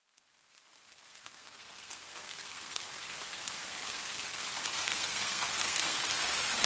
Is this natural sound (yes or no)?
no